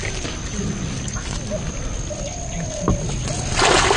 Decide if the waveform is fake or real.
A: real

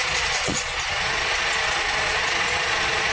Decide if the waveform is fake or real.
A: fake